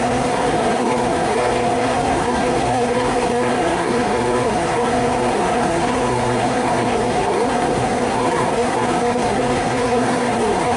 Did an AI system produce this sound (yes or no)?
yes